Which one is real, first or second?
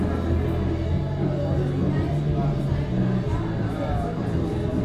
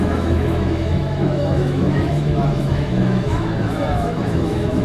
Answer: first